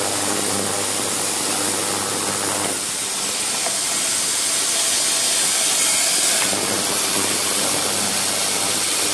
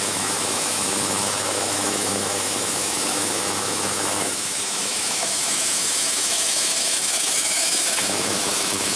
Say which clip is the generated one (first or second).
second